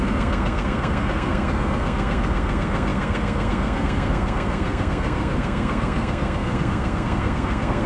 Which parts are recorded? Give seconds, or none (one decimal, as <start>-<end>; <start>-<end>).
none